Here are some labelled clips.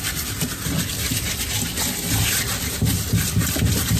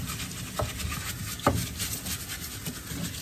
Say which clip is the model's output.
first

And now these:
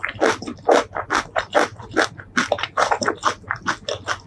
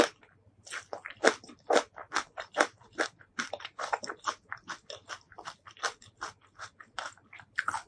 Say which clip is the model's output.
second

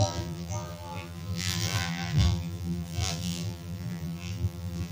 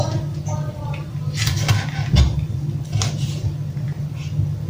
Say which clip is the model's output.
first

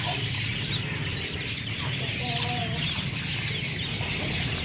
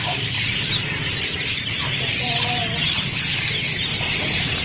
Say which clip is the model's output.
second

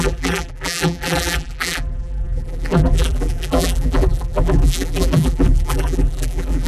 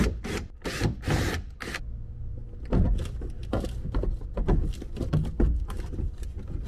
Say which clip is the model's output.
first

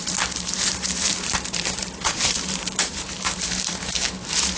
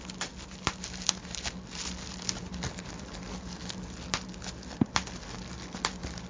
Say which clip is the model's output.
first